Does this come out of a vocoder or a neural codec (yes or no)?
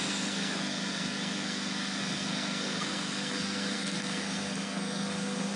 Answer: yes